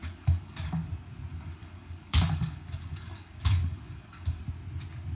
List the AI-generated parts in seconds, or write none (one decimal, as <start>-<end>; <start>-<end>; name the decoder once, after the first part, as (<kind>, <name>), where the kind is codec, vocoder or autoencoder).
0.0-0.9 (codec, DAC); 1.3-4.4

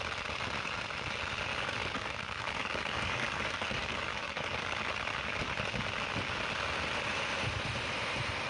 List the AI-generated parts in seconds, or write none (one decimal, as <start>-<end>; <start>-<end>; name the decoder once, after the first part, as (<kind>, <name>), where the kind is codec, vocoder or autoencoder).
1.5-4.8 (codec, DAC)

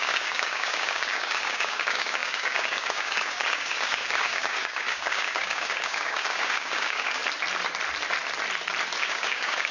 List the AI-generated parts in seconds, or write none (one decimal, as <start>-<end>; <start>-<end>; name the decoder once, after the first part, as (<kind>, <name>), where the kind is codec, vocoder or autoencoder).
0.0-7.2 (codec, DAC); 9.0-9.7

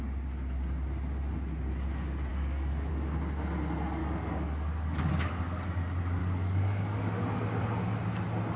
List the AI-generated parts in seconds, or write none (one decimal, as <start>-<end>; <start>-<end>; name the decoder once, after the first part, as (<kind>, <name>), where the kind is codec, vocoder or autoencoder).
2.3-2.9 (codec, DAC); 4.0-5.4; 6.2-7.2

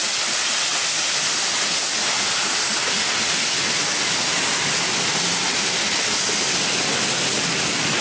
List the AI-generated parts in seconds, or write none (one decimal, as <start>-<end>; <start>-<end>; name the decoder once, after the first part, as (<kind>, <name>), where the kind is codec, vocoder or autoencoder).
none

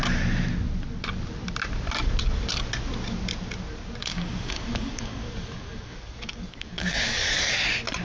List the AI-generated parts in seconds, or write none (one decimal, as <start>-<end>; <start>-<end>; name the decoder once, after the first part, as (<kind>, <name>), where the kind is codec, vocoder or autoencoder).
4.0-7.5 (codec, DAC)